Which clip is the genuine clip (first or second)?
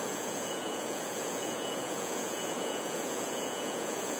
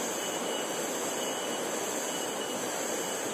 second